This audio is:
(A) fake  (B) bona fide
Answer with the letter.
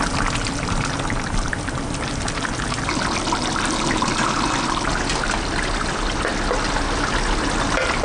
B